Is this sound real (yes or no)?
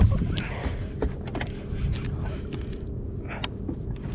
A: yes